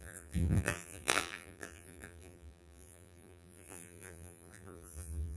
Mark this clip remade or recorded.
remade